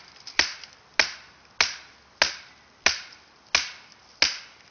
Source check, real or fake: real